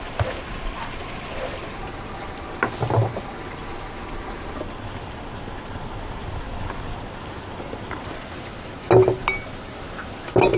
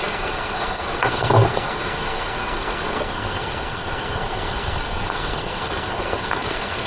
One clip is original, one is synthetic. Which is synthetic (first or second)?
second